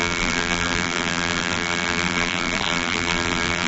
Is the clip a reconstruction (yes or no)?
yes